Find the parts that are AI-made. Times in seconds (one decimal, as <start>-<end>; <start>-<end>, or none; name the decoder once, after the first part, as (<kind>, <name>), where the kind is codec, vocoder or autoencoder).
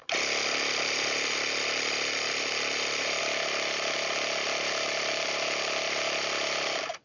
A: none